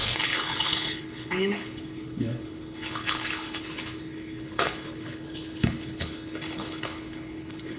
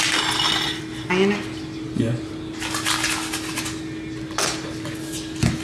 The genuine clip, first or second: second